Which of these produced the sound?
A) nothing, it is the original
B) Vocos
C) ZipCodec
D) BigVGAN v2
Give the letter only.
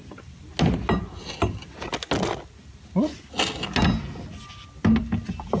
A